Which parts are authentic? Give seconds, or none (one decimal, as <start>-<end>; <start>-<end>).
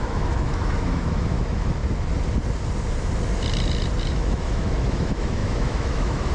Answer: 1.8-4.1